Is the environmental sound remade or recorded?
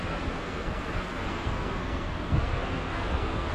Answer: remade